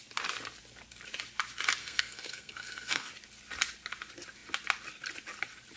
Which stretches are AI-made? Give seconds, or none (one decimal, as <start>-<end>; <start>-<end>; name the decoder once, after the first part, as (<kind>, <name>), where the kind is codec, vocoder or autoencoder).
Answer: 1.8-3.1 (codec, SNAC)